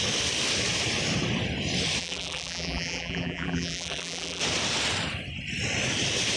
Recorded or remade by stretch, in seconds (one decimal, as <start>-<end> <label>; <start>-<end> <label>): 0.0-2.0 recorded; 2.0-4.4 remade; 4.4-6.4 recorded